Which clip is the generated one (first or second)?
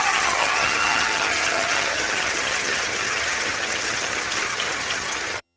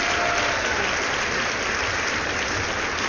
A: first